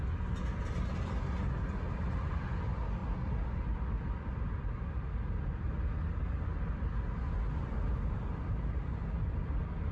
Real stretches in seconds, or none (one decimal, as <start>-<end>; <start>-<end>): 0.0-9.9